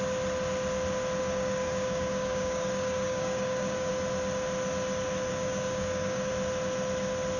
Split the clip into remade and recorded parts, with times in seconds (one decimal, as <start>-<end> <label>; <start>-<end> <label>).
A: 0.0-1.2 recorded; 1.2-3.9 remade; 3.9-5.3 recorded; 5.3-6.3 remade; 6.3-7.4 recorded